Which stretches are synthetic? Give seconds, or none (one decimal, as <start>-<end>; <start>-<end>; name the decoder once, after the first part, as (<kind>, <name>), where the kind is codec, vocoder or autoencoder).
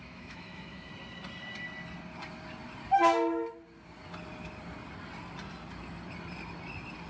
0.0-0.9 (autoencoder, DAC-VAE)